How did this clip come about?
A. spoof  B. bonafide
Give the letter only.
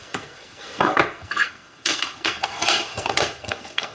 A